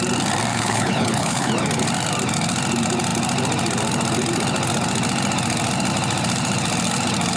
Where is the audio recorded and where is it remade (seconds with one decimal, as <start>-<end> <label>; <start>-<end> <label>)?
0.0-0.5 recorded; 0.5-1.5 remade; 1.5-7.4 recorded